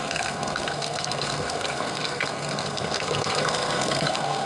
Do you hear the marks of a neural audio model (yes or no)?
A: yes